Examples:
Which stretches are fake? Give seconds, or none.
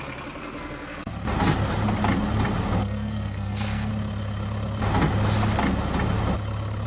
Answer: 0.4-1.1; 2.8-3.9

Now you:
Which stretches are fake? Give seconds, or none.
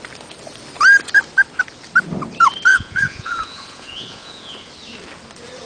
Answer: 2.7-4.7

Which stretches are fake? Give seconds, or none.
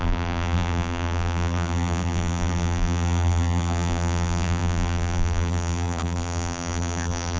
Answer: 0.0-7.4